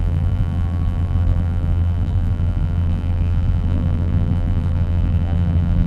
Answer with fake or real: fake